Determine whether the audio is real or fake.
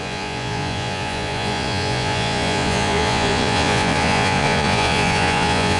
fake